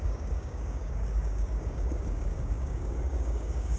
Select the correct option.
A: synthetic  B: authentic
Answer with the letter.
A